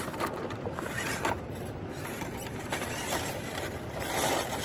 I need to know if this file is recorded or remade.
recorded